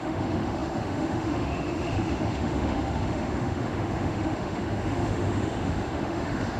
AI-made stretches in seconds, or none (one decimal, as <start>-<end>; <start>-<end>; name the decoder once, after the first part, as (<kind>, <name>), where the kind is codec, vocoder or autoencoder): 0.0-6.6 (autoencoder, DAC-VAE)